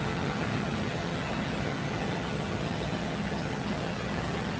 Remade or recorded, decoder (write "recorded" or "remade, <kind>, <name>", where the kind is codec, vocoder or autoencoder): remade, vocoder, HiFi-GAN